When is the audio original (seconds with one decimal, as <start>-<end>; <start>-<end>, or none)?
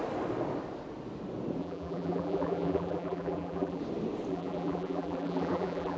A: 0.0-1.6; 3.8-4.3